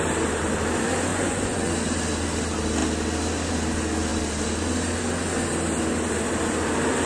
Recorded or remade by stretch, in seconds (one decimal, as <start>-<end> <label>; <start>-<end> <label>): 0.0-1.1 recorded; 1.1-1.7 remade; 1.7-7.1 recorded